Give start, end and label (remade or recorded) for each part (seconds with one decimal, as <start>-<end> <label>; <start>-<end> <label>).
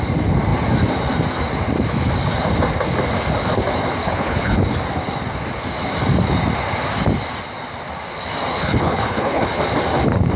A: 0.0-4.0 recorded; 4.0-4.6 remade; 4.6-8.5 recorded; 8.5-9.6 remade; 9.6-10.4 recorded